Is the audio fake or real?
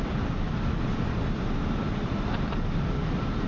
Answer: fake